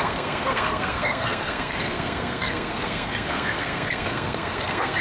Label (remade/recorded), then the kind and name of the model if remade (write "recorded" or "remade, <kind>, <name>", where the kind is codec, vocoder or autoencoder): remade, codec, SNAC